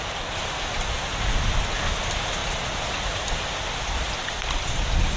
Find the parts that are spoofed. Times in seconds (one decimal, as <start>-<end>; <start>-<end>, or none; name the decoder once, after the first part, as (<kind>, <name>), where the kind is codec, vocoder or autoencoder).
none